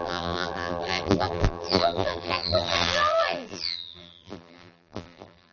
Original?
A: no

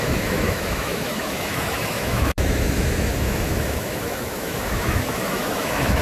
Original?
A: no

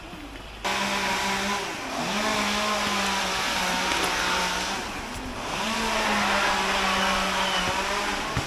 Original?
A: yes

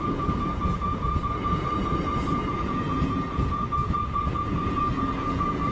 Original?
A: no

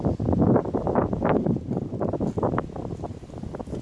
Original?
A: yes